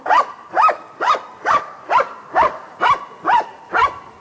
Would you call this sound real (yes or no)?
yes